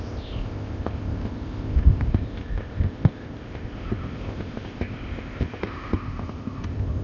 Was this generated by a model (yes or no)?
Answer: yes